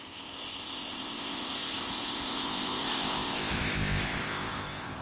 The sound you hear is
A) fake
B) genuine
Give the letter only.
A